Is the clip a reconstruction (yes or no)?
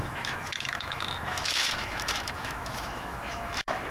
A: yes